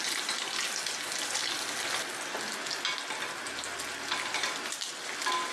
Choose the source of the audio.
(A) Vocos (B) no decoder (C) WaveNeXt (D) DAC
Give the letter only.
B